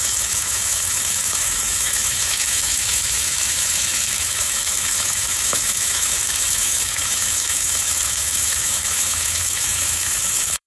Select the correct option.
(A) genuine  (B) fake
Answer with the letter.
B